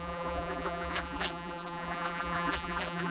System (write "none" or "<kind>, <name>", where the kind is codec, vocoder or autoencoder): vocoder, BigVGAN v2